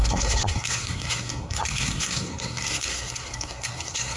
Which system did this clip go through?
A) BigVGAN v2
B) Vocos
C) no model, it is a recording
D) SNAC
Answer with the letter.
D